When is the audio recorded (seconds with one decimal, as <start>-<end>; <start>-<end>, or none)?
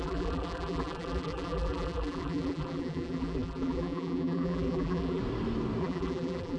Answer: 5.2-5.8